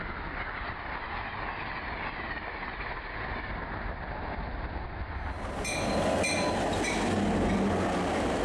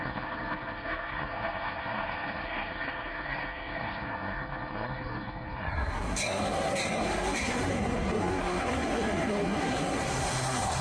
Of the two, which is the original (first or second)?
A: first